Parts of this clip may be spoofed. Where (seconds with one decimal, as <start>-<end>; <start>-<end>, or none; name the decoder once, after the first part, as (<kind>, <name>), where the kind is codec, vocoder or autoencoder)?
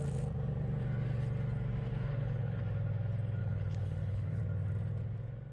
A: 1.9-2.6 (codec, HILCodec); 3.4-4.4